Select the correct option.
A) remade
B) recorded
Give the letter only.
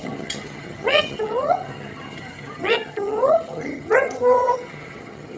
A